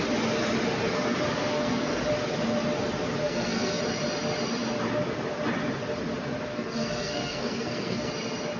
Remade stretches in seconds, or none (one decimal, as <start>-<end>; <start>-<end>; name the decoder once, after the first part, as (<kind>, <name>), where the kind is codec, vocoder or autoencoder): 1.4-2.0 (codec, SNAC); 3.2-3.8; 6.5-8.1